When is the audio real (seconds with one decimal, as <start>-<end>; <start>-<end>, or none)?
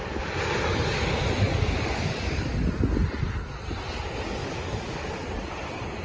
0.0-1.5; 2.6-4.4; 5.1-6.0